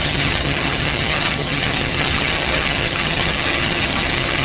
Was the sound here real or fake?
fake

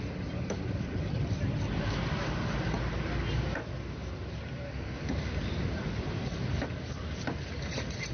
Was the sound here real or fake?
real